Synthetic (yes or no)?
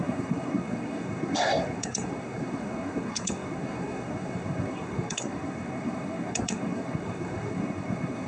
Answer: yes